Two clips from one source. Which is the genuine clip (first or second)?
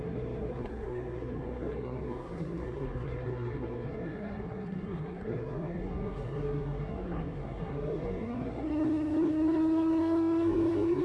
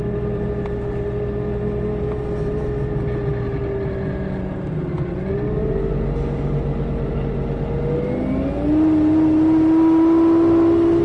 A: second